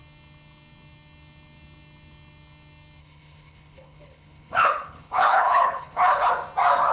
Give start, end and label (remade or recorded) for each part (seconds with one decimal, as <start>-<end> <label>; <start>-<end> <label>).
0.0-3.0 recorded; 3.0-6.3 remade; 6.3-6.9 recorded